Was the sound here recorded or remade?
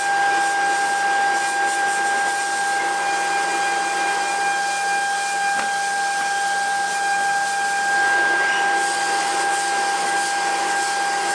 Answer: recorded